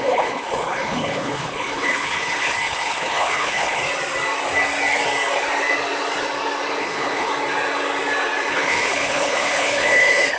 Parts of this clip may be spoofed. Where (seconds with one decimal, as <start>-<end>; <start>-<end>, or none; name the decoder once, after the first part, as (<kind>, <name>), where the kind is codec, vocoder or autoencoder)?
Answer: 0.0-3.8 (codec, HILCodec); 6.8-7.3; 8.5-10.4